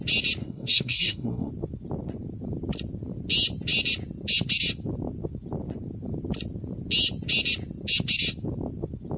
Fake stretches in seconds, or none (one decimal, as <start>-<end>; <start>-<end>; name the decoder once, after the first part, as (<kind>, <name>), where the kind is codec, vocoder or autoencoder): 0.4-1.5 (codec, SNAC)